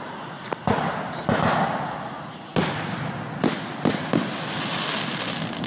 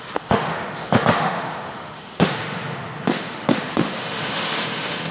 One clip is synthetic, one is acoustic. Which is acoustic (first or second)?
first